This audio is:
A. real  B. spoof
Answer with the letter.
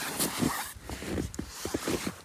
B